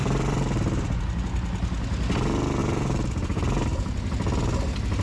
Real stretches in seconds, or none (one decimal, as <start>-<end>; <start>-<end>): 1.2-2.6; 4.1-5.0